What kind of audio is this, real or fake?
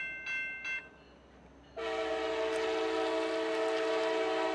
real